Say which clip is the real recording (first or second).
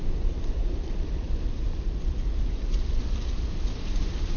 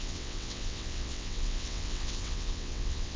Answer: first